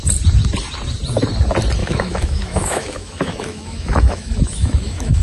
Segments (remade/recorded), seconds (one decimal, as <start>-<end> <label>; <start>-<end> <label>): 0.0-1.8 recorded; 1.8-5.2 remade